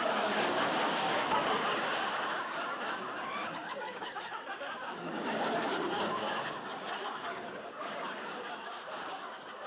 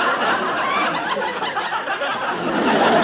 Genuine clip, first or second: second